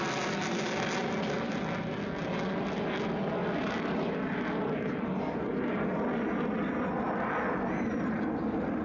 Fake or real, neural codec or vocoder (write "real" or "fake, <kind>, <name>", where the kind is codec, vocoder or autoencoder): real